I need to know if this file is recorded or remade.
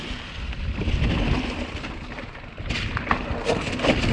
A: recorded